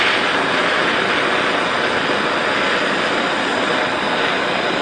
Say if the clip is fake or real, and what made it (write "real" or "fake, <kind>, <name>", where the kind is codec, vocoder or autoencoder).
real